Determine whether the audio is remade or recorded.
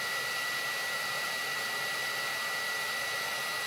recorded